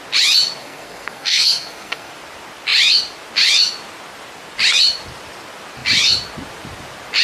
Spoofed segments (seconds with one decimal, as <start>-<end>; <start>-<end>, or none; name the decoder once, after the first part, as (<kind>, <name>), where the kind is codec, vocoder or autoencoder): 0.6-2.1 (codec, SNAC)